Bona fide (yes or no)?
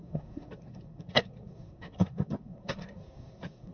no